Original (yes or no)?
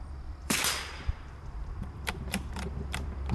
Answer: no